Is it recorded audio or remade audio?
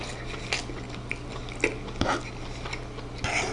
recorded